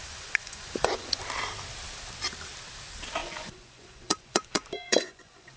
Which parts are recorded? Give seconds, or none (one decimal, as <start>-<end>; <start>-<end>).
1.2-3.2